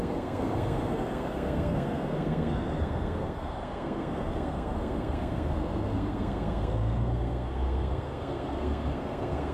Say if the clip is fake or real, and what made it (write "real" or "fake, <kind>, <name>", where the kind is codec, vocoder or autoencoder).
fake, codec, SNAC